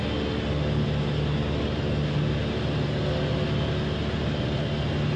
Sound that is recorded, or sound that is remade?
recorded